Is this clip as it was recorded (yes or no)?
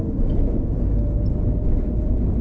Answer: yes